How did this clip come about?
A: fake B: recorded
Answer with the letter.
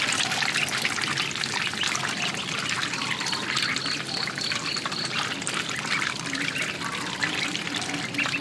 B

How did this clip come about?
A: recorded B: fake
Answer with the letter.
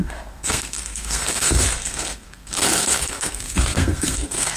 B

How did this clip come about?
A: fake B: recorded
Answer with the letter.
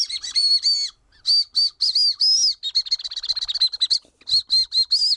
B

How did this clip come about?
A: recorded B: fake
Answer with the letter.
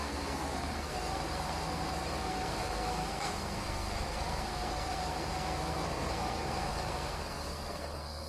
B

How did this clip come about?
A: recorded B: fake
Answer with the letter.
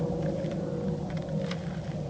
A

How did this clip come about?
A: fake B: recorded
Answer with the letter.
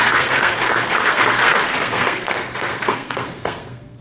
A